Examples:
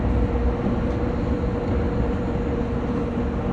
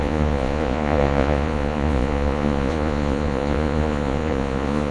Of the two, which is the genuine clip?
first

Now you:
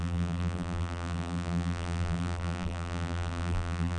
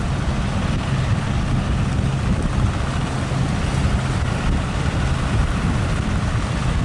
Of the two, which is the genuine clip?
second